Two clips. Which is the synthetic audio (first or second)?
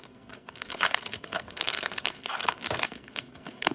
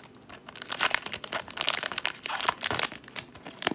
first